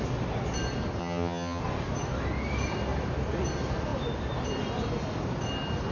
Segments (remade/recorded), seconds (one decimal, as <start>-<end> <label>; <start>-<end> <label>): 0.0-1.0 recorded; 1.0-1.6 remade; 1.6-5.9 recorded

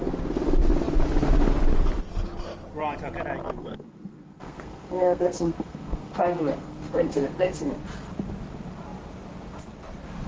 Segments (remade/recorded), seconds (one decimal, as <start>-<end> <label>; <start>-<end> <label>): 0.0-3.6 recorded; 3.6-7.8 remade; 7.8-10.3 recorded

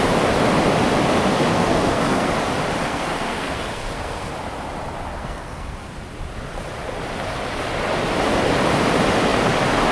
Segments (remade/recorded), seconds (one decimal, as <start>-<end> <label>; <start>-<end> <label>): 0.0-1.5 recorded; 1.5-2.3 remade; 2.3-2.8 recorded; 2.8-4.3 remade; 4.3-5.1 recorded; 5.1-5.9 remade; 5.9-9.9 recorded

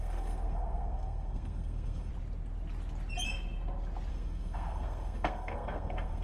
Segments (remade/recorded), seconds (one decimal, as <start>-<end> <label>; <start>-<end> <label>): 0.0-2.1 remade; 2.1-4.1 recorded; 4.1-6.2 remade

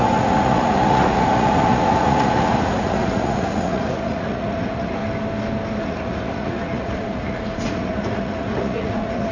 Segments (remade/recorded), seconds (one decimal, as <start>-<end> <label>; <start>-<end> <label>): 0.0-5.0 remade; 5.0-5.8 recorded; 5.8-9.3 remade

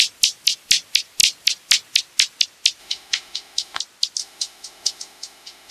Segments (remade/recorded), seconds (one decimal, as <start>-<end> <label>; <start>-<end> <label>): 0.0-2.8 recorded; 2.8-3.8 remade; 3.8-4.2 recorded; 4.2-5.7 remade